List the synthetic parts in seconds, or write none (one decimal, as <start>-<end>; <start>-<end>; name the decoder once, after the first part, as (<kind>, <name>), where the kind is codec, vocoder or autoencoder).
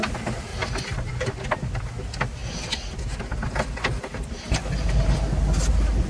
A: 0.5-1.3 (vocoder, BigVGAN v2)